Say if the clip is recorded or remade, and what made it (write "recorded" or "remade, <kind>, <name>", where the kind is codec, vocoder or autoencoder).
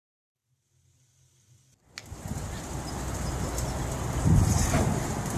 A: recorded